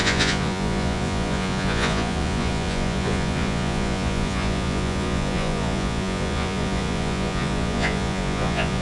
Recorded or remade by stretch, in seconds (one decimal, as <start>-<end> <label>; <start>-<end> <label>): 0.0-8.8 remade